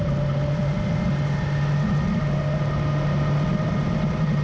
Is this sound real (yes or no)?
yes